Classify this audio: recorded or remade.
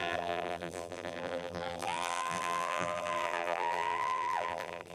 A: remade